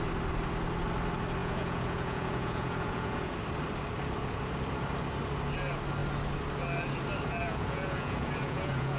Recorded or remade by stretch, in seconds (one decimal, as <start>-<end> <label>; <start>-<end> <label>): 0.0-1.4 recorded; 1.4-3.4 remade; 3.4-7.4 recorded; 7.4-9.0 remade